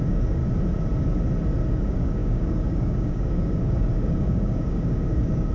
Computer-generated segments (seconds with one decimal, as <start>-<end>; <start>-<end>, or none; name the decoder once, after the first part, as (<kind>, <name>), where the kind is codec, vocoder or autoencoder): 0.0-0.4 (codec, DAC); 1.7-5.5